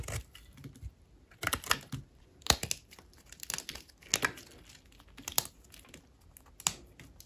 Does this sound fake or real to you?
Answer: real